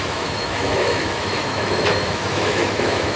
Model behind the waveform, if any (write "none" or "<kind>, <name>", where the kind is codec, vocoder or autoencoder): autoencoder, DAC-VAE